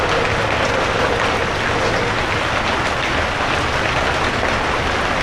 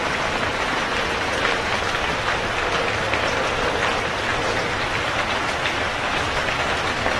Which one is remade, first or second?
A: second